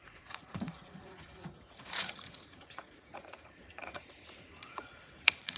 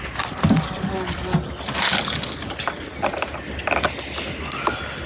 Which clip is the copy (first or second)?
first